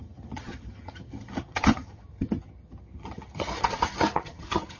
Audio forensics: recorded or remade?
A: remade